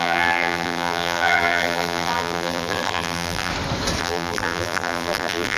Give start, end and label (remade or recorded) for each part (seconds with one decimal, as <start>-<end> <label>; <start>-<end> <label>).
0.0-3.5 remade; 3.5-4.0 recorded; 4.0-5.6 remade